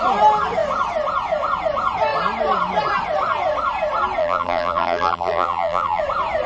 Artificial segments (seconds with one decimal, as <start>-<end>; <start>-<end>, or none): 4.2-6.0